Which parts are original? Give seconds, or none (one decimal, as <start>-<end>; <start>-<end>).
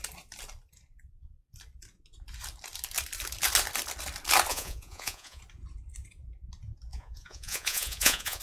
0.0-4.5; 5.4-6.9